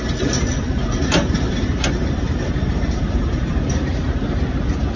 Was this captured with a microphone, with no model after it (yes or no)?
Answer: no